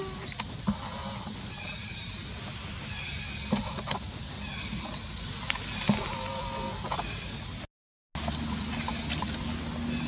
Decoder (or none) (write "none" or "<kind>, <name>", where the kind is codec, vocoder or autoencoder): none